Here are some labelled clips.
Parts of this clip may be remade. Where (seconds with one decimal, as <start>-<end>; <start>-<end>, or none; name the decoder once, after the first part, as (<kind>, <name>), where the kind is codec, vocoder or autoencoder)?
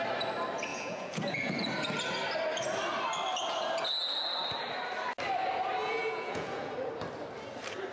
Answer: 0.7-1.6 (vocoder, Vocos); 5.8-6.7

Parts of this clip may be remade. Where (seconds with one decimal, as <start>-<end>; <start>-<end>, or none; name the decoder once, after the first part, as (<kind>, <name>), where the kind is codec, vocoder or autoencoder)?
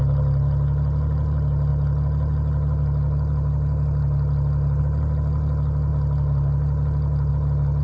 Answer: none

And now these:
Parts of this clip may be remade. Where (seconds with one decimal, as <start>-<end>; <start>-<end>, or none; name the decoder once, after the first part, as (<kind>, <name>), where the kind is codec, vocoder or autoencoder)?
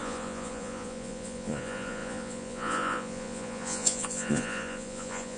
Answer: 0.0-5.4 (vocoder, Vocos)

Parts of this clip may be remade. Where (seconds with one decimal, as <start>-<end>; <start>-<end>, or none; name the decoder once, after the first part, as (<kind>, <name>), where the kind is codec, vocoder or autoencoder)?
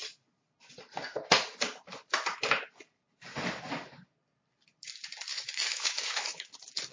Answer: 5.3-6.5 (autoencoder, DAC-VAE)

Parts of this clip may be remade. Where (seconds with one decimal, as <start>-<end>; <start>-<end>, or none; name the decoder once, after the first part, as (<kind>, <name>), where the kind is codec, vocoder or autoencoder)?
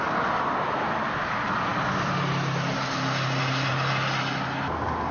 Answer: none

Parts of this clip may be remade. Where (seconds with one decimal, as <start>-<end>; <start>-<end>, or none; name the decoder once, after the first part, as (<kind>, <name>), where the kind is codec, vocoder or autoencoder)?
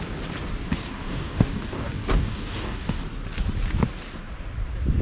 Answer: 0.8-3.0 (codec, DAC)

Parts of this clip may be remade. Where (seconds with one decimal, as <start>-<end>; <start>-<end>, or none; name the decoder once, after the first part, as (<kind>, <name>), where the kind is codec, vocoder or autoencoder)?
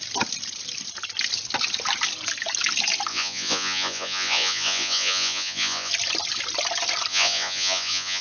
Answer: 3.1-5.9 (vocoder, Vocos); 7.1-8.2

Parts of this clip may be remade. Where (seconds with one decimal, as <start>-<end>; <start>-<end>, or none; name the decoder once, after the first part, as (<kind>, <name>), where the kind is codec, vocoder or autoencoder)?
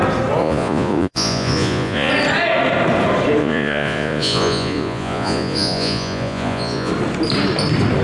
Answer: 0.4-2.1 (vocoder, Vocos); 3.4-6.9